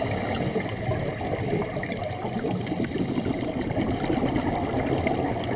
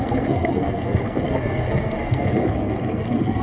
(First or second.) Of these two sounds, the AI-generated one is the second